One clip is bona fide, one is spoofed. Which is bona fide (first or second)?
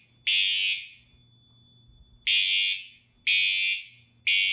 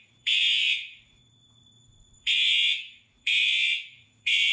first